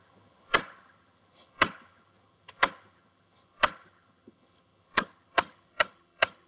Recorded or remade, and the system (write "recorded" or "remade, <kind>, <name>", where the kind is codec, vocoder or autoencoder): remade, vocoder, HiFi-GAN